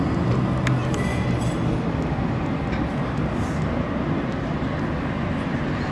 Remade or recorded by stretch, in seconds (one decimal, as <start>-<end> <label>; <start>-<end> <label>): 0.0-5.9 recorded